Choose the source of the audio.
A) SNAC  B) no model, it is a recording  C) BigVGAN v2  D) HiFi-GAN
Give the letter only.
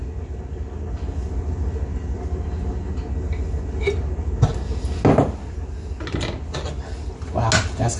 B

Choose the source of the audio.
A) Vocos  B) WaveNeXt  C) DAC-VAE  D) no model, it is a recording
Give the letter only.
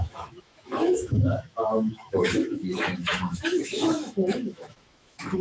C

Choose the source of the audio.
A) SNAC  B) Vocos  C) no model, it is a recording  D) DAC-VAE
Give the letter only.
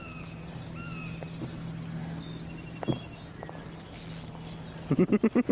C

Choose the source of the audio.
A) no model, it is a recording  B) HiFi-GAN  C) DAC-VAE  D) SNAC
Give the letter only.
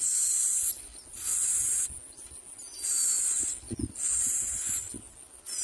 A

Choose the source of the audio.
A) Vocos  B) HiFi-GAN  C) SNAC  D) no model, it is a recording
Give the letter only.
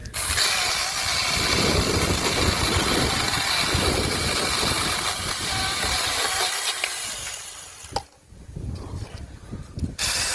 D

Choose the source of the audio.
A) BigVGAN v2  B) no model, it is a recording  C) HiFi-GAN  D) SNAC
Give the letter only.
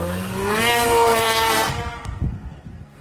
D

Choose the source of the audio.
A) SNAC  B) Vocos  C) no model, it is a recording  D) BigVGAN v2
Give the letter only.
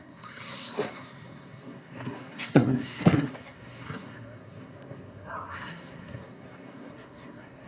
A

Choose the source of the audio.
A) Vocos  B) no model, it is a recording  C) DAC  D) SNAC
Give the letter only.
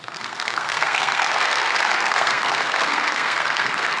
D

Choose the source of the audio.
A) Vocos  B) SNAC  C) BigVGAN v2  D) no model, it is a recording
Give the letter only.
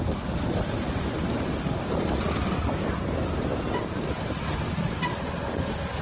D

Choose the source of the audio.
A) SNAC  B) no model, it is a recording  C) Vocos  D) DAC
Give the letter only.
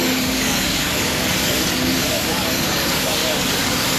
D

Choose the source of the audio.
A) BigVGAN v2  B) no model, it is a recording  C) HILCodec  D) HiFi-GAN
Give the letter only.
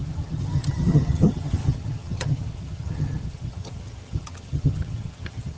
D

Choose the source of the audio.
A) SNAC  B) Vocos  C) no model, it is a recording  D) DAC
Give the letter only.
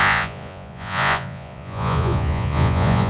B